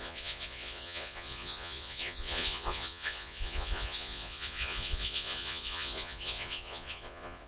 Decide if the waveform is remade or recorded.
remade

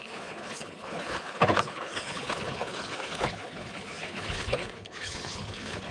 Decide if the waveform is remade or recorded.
remade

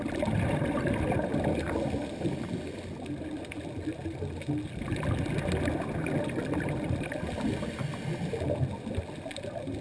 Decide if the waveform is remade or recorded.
recorded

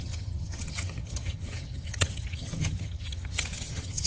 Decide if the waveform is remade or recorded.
remade